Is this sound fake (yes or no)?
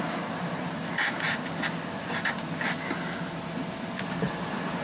no